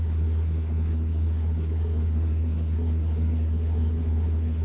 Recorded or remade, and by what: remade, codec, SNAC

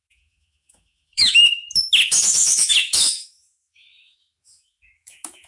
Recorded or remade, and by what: remade, autoencoder, DAC-VAE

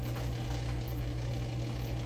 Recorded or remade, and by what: recorded